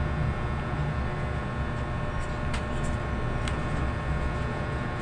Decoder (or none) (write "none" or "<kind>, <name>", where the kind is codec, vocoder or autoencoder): none